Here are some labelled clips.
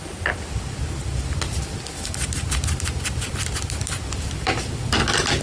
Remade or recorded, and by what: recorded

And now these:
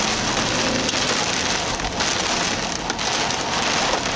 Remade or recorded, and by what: recorded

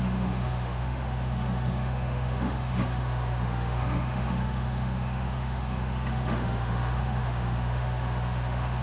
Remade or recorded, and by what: remade, autoencoder, DAC-VAE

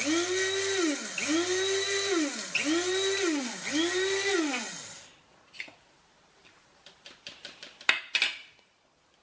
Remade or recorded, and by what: recorded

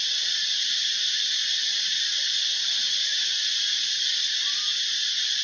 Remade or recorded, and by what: recorded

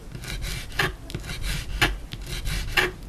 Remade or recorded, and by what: recorded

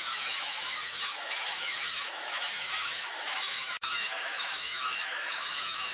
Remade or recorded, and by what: remade, autoencoder, DAC-VAE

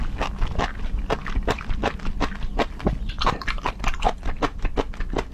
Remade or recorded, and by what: recorded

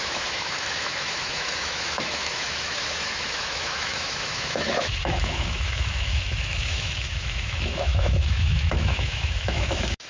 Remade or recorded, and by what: remade, autoencoder, DAC-VAE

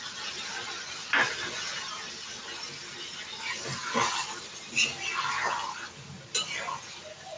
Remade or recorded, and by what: recorded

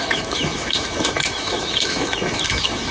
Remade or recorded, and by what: remade, autoencoder, DAC-VAE